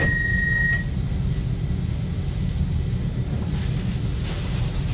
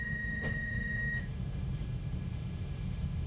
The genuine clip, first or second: first